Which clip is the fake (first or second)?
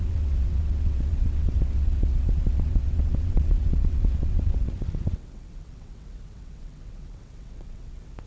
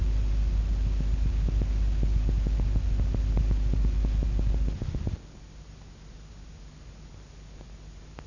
first